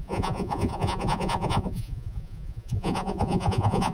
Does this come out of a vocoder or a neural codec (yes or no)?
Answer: yes